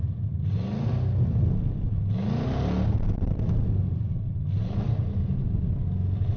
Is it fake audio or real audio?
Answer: real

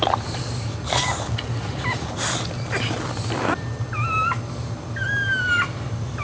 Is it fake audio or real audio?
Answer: real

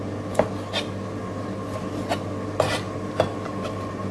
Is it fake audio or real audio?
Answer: real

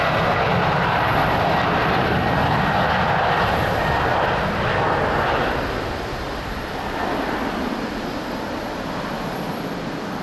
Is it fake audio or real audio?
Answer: real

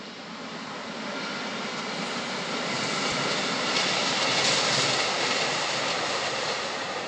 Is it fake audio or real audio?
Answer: real